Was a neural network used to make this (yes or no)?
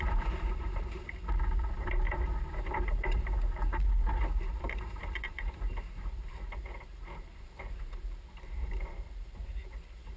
yes